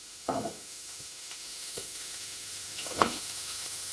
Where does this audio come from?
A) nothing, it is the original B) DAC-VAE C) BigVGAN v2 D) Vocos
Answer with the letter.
B